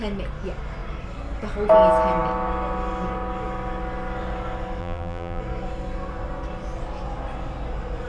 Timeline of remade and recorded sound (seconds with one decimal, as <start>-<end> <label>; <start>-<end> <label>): 0.0-4.8 recorded; 4.8-5.4 remade; 5.4-8.1 recorded